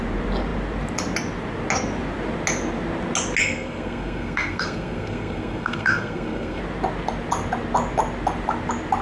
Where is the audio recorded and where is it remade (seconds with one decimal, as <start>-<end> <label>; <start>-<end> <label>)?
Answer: 0.0-3.4 recorded; 3.4-6.6 remade; 6.6-9.0 recorded